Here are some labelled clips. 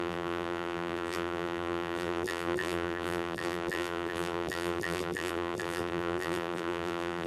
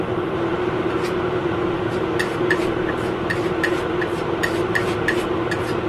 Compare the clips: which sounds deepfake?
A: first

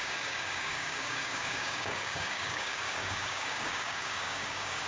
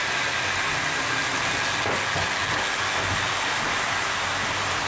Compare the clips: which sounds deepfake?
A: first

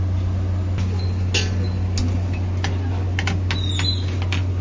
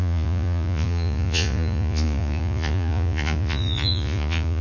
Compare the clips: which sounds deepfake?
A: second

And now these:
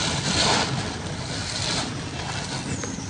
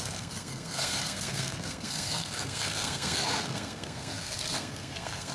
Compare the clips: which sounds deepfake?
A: second